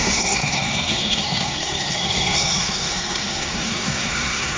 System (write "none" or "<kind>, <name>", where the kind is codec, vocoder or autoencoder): codec, SNAC